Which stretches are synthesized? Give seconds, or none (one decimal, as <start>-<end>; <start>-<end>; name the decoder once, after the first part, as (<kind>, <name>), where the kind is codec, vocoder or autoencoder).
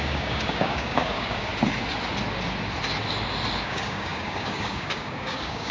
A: 0.0-1.5 (codec, DAC); 3.6-5.7